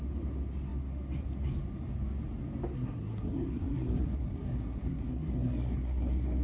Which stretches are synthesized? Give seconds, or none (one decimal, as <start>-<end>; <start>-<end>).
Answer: 2.7-6.4